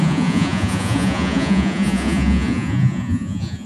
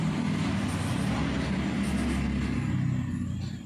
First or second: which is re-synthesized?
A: first